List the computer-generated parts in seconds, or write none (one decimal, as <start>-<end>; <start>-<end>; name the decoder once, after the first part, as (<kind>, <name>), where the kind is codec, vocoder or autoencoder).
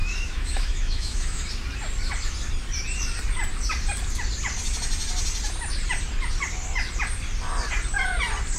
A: 0.0-1.5 (autoencoder, DAC-VAE)